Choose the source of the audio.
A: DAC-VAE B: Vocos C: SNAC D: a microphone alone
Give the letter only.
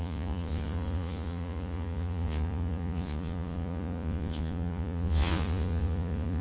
B